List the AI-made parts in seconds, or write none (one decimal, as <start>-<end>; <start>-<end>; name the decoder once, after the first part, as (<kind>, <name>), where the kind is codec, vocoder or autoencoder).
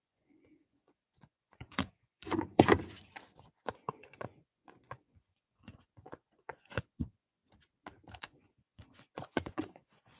0.0-2.7 (vocoder, Vocos); 3.5-7.4; 8.2-10.2